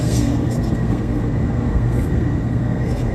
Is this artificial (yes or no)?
yes